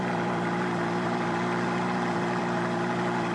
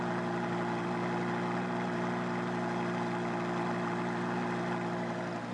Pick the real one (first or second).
second